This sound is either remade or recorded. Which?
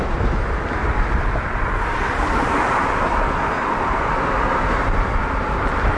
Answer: recorded